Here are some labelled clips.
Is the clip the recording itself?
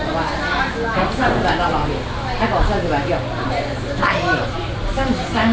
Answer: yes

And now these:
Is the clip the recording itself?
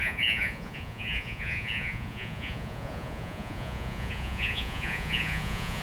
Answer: no